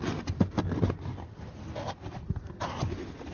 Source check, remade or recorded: recorded